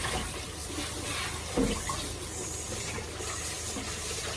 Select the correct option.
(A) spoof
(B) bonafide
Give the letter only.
B